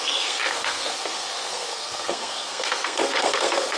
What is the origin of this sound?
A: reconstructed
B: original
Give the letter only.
A